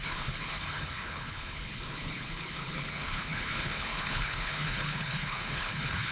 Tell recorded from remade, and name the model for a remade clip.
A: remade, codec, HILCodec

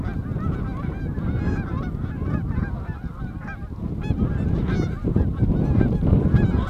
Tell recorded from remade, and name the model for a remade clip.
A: recorded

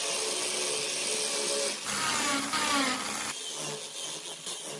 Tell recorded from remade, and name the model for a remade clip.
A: recorded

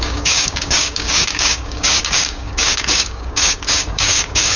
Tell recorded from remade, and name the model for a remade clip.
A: remade, codec, DAC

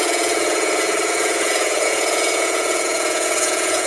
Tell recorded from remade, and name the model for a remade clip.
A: remade, vocoder, Vocos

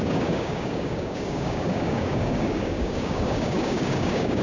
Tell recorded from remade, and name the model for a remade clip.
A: remade, codec, DAC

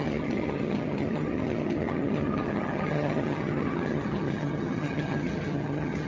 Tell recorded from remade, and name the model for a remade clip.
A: remade, vocoder, HiFi-GAN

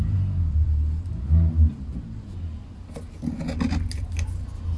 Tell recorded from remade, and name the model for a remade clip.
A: recorded